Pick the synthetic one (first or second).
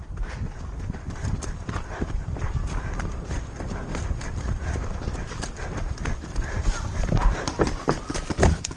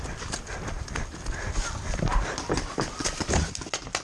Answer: first